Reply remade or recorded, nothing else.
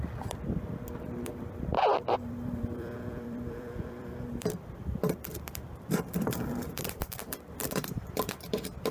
remade